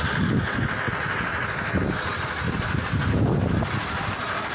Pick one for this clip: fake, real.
real